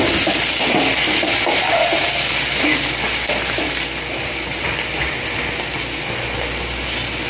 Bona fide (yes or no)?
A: yes